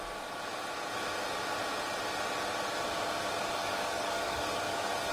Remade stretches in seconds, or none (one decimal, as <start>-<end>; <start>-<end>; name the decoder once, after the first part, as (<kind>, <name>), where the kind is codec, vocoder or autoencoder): 3.6-5.1 (codec, DAC)